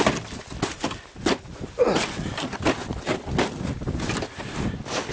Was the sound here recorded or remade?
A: recorded